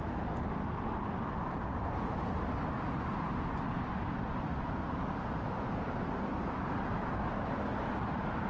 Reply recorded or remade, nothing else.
recorded